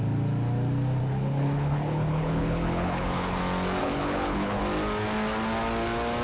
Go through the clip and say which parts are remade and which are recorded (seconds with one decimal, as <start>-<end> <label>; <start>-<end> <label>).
0.0-1.0 recorded; 1.0-3.4 remade; 3.4-3.8 recorded; 3.8-4.6 remade; 4.6-6.2 recorded